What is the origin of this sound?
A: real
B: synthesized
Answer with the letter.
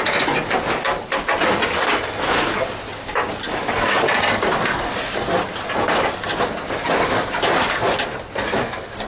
A